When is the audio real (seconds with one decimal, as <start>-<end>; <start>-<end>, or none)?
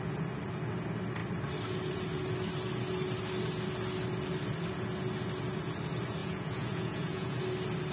0.0-6.2; 7.4-7.9